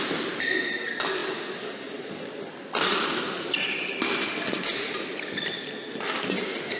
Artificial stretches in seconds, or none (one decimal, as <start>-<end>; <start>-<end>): none